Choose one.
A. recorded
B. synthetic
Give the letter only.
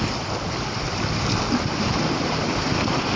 B